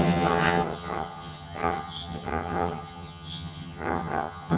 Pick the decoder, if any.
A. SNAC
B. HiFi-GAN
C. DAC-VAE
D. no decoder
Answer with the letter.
B